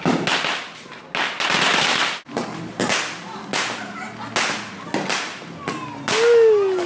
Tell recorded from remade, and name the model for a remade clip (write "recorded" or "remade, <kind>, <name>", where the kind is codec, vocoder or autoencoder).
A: recorded